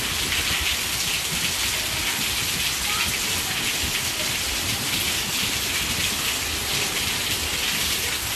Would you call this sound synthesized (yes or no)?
no